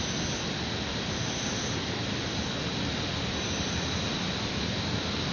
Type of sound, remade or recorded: recorded